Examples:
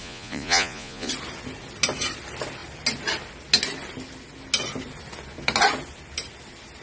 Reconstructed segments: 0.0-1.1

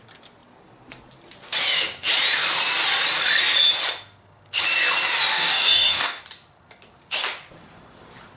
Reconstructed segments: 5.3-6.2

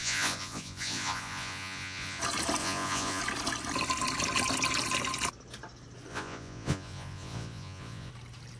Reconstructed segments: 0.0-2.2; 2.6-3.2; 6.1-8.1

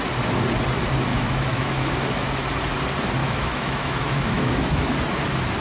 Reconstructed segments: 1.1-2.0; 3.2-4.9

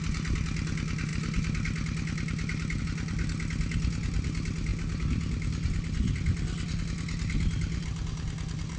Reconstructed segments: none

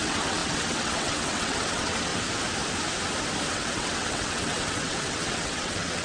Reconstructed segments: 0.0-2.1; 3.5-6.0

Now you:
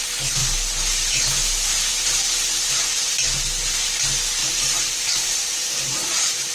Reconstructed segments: 0.4-1.9; 4.4-6.5